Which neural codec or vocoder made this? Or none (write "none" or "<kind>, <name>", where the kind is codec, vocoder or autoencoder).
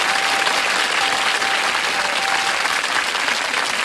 none